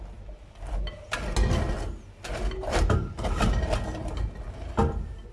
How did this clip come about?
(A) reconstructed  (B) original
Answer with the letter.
B